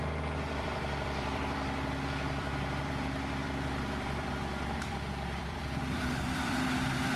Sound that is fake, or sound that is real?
fake